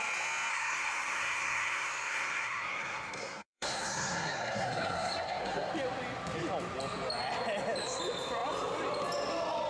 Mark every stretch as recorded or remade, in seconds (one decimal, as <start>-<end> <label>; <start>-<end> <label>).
0.0-0.5 recorded; 0.5-5.7 remade; 5.7-9.7 recorded